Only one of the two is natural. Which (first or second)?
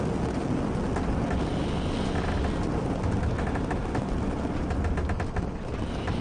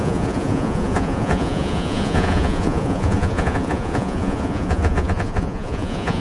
first